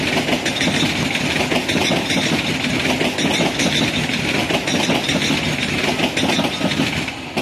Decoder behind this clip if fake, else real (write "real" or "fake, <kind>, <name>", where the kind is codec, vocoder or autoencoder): real